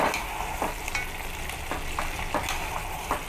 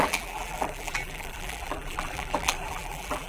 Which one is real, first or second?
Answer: first